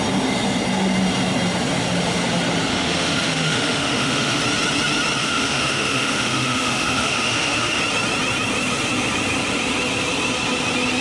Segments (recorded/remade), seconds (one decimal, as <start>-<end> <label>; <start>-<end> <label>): 0.0-2.7 recorded; 2.7-4.4 remade; 4.4-5.2 recorded; 5.2-7.8 remade; 7.8-11.0 recorded